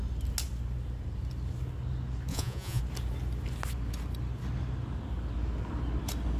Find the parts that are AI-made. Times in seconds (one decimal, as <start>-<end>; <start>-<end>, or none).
2.3-2.8